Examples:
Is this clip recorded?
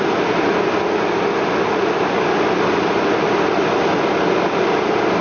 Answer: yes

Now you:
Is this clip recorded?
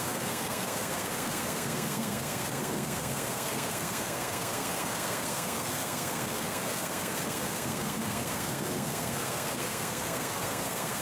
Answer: no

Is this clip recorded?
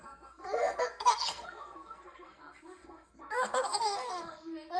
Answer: no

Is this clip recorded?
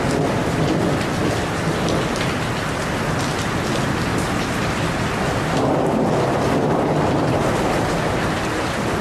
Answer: yes